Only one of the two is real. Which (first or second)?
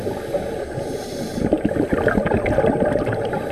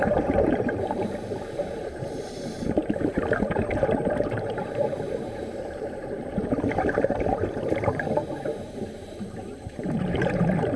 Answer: first